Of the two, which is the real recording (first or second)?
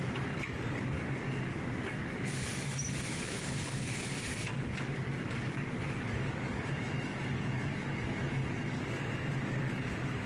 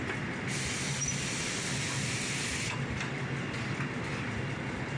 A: second